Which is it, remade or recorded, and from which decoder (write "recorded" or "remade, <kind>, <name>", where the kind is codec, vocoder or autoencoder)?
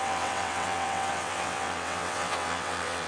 remade, vocoder, WaveNeXt